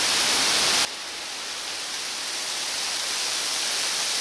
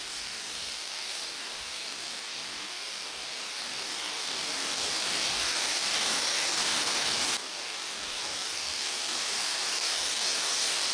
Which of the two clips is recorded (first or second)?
first